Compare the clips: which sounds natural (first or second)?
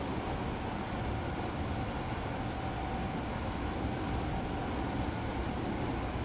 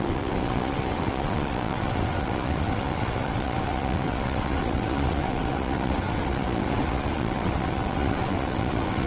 first